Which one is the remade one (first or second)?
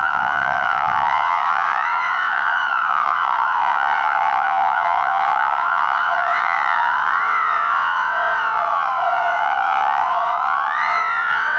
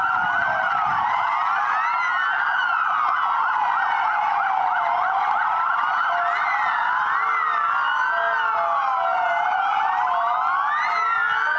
first